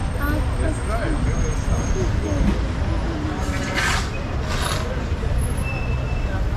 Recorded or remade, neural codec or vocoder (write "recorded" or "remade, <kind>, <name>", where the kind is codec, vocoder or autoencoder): recorded